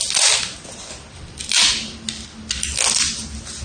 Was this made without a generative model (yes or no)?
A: yes